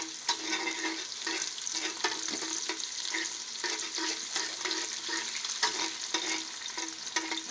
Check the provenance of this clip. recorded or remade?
recorded